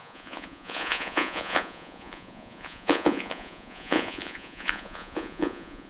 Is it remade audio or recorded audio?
remade